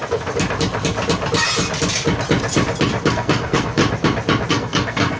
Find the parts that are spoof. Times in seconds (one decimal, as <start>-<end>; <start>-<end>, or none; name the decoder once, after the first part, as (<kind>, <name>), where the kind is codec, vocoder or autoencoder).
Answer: 3.1-3.8 (codec, SNAC); 4.5-5.2